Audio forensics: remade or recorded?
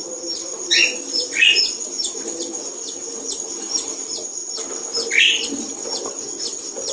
recorded